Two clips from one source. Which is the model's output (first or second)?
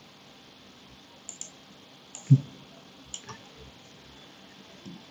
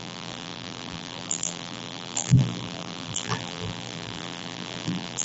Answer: second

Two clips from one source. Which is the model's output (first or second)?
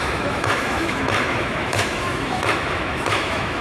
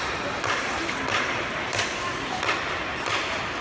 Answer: first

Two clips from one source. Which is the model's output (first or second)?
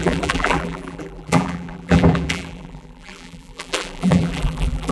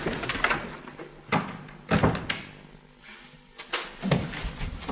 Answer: first